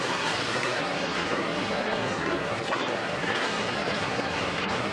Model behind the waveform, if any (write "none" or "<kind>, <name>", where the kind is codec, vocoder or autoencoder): codec, SNAC